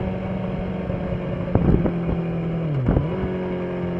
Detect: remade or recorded recorded